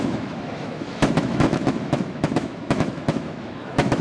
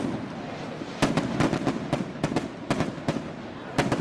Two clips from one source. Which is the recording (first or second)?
second